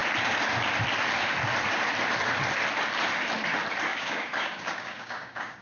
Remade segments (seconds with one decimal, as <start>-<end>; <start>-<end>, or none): 3.9-5.6